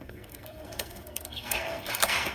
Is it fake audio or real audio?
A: fake